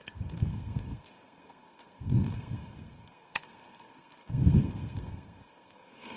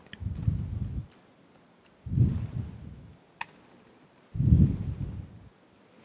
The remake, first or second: first